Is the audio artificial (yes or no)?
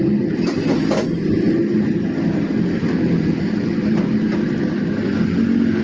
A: no